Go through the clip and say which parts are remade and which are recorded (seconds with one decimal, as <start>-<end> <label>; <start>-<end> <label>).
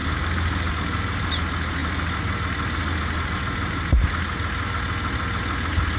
0.0-0.7 remade; 0.7-6.0 recorded